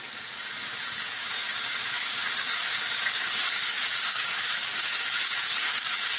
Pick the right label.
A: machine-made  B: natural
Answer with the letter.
A